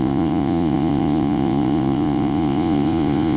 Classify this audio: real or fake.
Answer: fake